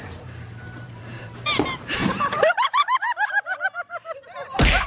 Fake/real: fake